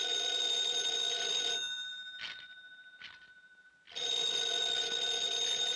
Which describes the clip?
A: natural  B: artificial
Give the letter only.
A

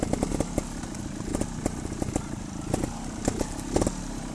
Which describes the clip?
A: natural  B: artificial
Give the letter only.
A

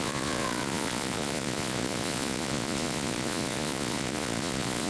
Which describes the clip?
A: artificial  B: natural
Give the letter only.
A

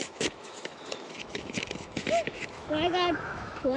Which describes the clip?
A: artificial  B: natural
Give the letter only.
A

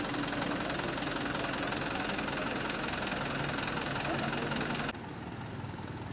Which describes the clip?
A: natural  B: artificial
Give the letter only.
A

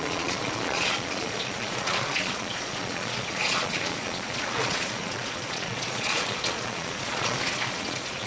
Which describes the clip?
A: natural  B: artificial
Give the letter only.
B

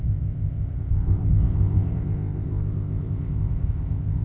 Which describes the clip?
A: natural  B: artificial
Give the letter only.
B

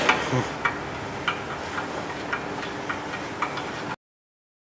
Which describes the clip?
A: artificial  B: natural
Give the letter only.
B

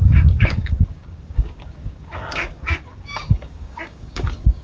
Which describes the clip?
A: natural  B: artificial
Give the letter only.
B